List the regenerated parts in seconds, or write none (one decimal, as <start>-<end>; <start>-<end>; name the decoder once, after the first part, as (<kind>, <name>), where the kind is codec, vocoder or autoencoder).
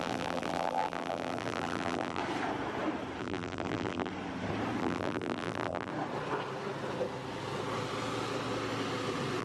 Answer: 0.0-2.2 (vocoder, BigVGAN v2); 3.2-4.1; 4.8-5.9